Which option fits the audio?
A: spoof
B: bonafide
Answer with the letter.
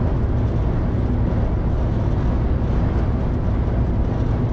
B